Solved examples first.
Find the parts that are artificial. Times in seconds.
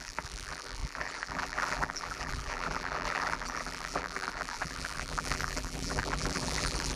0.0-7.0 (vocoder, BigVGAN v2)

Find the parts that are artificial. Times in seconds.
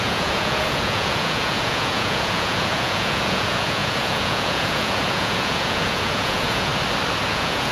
0.0-6.7 (vocoder, Vocos); 7.3-7.7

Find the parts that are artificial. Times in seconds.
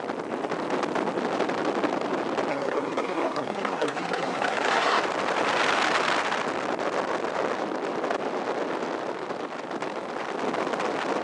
2.5-5.0 (codec, SNAC)